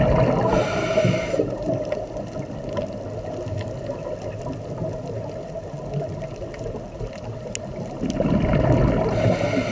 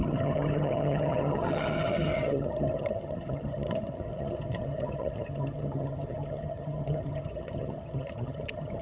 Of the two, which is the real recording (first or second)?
first